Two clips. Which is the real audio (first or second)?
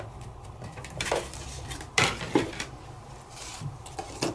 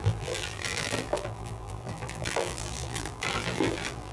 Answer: first